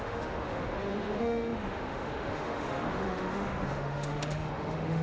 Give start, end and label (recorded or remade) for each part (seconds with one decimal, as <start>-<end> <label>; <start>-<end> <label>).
0.0-5.0 remade